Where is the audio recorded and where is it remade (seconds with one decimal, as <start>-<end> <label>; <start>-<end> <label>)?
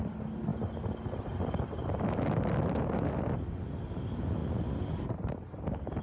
0.0-6.0 recorded